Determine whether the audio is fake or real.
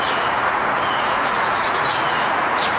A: fake